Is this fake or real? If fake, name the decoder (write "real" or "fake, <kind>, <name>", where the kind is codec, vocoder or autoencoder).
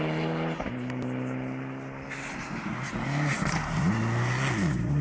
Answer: real